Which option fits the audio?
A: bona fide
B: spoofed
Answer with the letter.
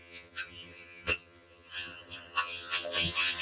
B